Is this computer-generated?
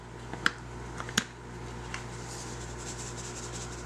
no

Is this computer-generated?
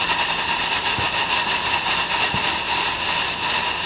no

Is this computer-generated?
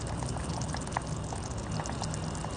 no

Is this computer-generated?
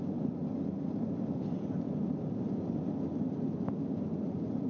no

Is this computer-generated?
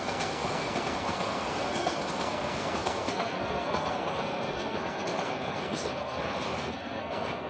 yes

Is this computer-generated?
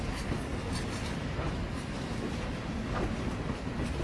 no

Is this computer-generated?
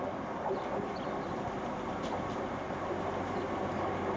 no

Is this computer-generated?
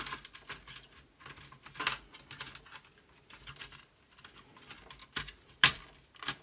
no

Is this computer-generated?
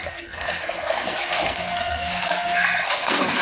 yes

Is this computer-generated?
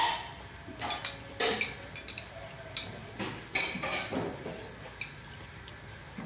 no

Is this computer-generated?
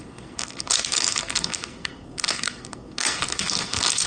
yes